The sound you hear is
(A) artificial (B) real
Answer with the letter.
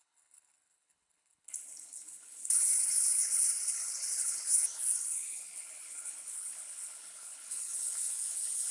A